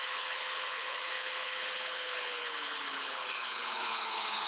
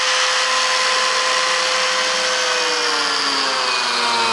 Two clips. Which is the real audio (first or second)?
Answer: second